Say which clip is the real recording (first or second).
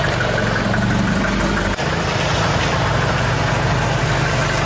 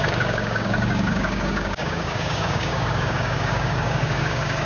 first